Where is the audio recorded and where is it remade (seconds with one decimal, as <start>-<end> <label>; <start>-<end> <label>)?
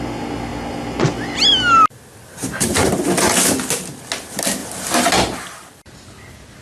0.0-6.6 recorded